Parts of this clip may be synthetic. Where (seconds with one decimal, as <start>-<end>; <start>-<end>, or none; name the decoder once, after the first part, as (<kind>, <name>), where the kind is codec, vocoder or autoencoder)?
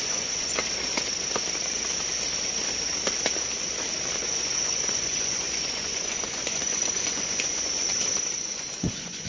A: 0.0-0.6 (vocoder, Vocos); 4.2-7.9; 8.4-9.3